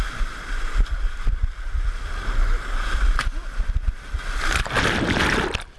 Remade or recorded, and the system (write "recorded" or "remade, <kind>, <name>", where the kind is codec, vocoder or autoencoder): recorded